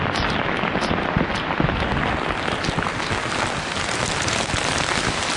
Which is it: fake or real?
real